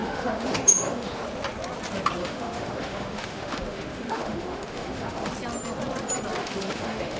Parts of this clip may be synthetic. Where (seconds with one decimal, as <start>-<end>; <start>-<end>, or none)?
0.0-1.2; 2.2-5.3; 6.4-7.2